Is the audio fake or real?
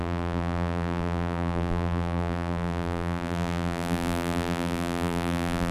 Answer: fake